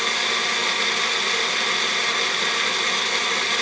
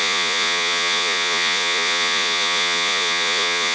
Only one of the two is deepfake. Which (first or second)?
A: second